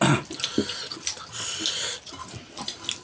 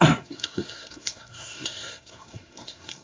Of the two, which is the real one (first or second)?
first